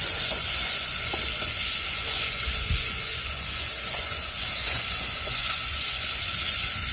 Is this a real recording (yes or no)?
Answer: no